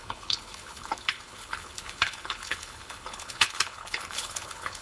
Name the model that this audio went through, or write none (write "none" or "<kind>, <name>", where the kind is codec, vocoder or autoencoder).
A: codec, HILCodec